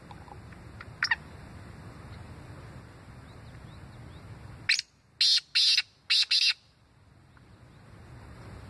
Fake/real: real